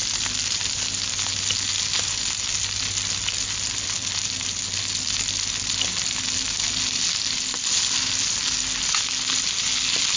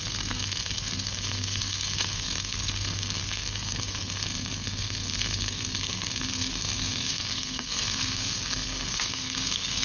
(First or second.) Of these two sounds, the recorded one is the first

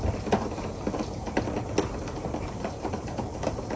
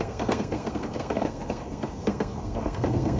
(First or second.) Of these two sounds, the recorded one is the first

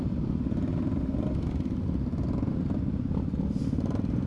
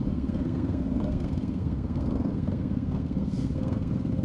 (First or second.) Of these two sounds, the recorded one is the first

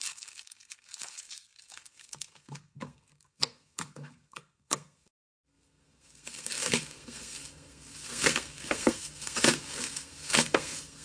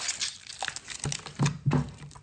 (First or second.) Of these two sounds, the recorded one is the second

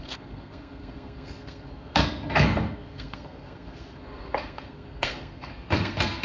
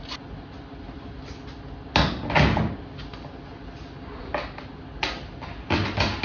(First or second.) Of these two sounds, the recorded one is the second